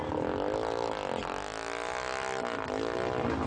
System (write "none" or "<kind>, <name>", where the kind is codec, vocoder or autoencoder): none